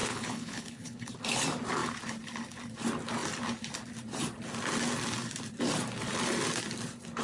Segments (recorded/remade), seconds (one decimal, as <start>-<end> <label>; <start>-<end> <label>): 0.0-1.1 remade; 1.1-7.2 recorded